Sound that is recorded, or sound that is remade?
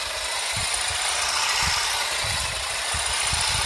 recorded